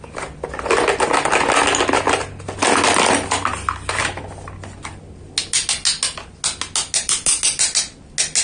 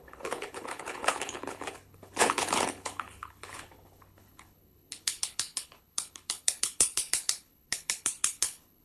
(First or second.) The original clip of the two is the first